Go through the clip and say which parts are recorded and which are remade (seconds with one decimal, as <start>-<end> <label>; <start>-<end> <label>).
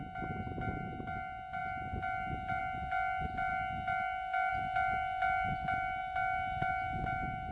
0.0-7.5 recorded